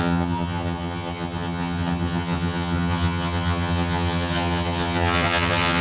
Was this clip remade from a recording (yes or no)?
yes